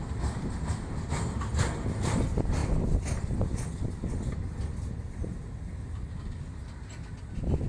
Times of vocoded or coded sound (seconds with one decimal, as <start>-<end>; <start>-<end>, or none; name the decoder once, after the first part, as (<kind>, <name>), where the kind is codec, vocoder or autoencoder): none